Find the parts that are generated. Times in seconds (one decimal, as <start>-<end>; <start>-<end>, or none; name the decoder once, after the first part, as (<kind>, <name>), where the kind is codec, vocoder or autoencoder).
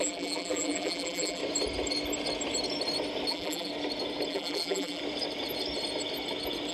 0.0-1.4 (vocoder, BigVGAN v2); 3.3-3.7; 4.3-5.0